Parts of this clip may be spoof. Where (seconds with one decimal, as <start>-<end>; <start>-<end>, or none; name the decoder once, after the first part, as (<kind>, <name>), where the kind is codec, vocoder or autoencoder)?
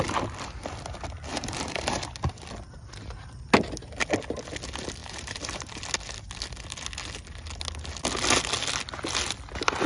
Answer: 1.3-2.1 (vocoder, BigVGAN v2); 5.0-5.8